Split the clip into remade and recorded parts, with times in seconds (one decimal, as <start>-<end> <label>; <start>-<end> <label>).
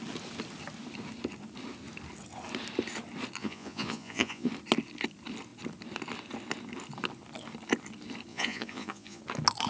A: 0.0-3.4 recorded; 3.4-4.5 remade; 4.5-8.3 recorded; 8.3-9.2 remade; 9.2-9.7 recorded